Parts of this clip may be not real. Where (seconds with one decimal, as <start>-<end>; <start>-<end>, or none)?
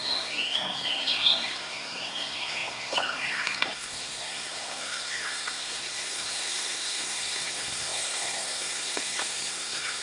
0.0-10.0